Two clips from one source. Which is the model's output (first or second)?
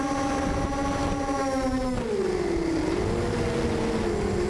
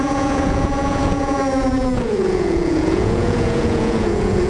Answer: second